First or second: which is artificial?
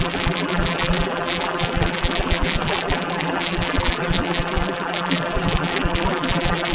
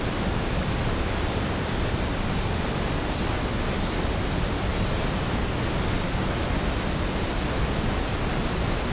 first